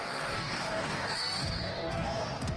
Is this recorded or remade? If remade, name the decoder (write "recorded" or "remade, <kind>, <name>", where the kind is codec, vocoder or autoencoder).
remade, codec, DAC